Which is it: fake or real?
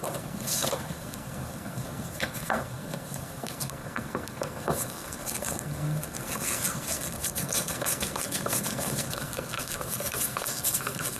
fake